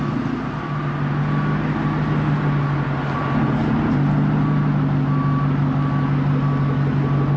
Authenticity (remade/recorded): recorded